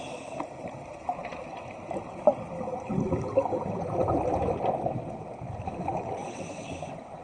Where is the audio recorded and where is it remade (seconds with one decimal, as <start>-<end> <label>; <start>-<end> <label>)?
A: 0.0-6.2 recorded; 6.2-6.7 remade; 6.7-7.2 recorded

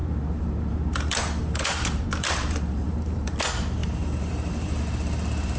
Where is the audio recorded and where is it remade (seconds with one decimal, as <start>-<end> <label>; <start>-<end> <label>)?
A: 0.0-3.4 remade; 3.4-3.8 recorded; 3.8-4.8 remade; 4.8-5.6 recorded